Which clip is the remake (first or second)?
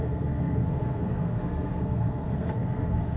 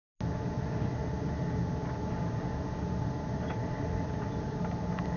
first